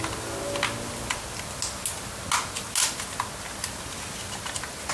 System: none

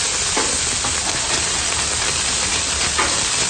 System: none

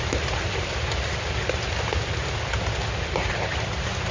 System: none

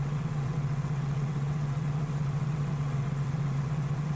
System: vocoder, WaveNeXt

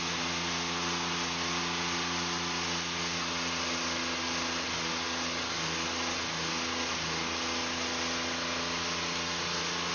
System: none